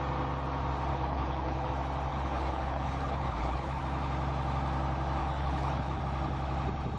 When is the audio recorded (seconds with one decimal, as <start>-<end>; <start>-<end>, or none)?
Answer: 0.0-0.9; 1.7-2.1; 3.8-5.2; 6.0-7.0